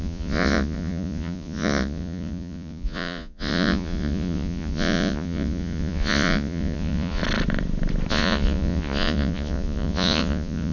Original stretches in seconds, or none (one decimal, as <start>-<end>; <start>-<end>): 7.2-8.1